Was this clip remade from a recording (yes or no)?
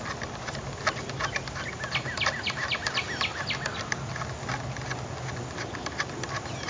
no